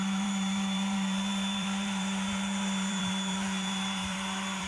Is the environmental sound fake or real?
fake